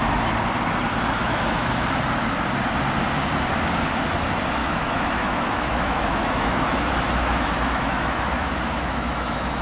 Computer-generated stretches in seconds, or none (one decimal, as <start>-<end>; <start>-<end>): 1.2-1.7; 4.6-9.6